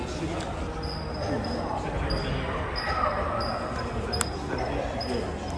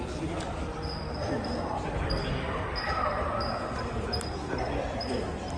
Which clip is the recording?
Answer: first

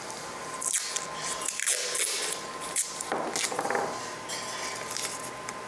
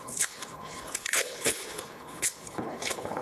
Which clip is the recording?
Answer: first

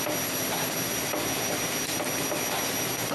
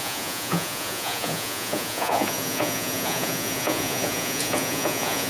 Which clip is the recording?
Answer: first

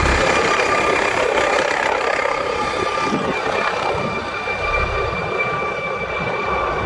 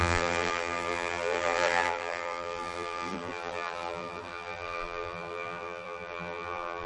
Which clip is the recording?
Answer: first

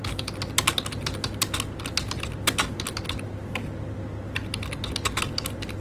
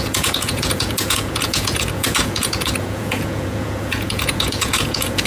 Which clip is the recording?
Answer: first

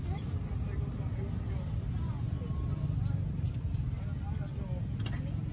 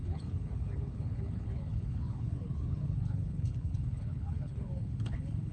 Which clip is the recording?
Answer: first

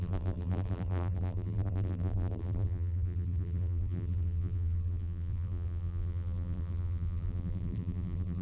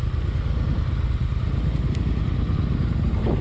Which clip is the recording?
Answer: second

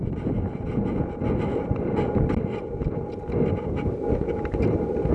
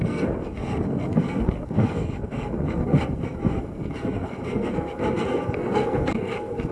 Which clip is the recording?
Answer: first